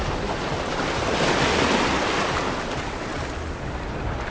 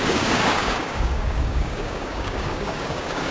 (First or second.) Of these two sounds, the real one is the first